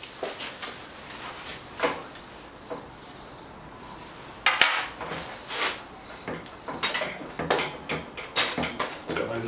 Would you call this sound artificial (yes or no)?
no